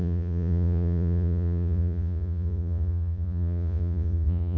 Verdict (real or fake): fake